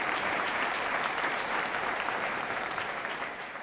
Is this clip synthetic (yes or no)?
yes